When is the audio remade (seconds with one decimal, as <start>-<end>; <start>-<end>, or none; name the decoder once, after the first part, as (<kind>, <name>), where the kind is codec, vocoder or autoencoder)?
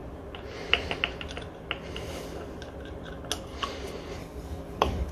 4.2-5.1 (codec, DAC)